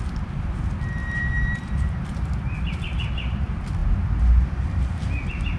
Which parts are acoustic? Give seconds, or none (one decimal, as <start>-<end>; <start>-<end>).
0.0-1.0; 2.4-5.6